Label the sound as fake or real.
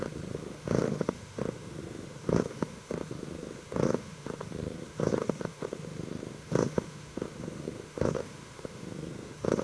fake